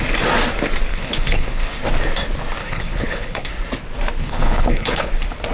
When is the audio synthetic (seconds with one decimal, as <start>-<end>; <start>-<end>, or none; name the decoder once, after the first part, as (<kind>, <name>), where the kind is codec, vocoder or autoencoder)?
0.9-1.8 (codec, HILCodec); 2.6-3.5; 4.2-5.1